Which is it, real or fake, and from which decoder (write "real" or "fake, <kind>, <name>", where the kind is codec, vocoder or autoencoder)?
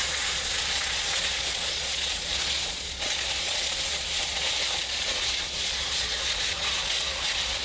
fake, vocoder, Vocos